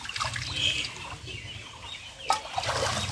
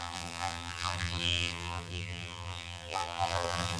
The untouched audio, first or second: first